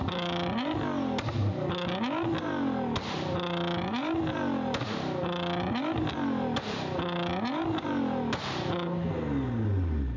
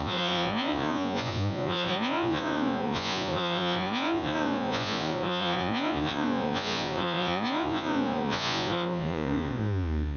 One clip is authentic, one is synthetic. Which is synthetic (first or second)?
second